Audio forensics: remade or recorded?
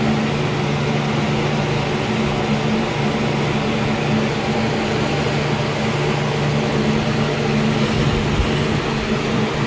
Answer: recorded